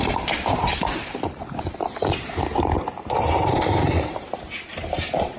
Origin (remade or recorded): remade